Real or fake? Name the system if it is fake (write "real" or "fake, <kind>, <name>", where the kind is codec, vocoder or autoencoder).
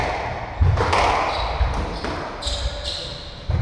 real